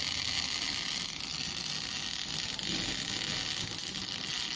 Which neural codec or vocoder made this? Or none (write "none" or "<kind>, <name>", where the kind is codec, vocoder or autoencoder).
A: none